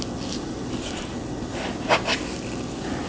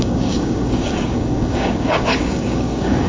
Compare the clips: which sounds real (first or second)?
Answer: first